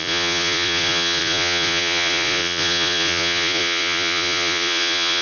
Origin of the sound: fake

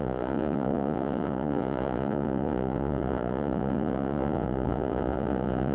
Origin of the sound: fake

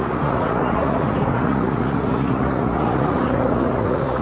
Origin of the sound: fake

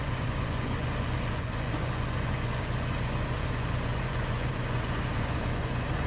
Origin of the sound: fake